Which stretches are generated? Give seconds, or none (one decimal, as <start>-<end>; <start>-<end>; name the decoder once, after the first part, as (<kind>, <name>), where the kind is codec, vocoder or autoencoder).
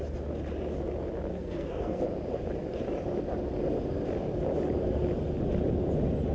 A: 1.3-2.0 (codec, SNAC)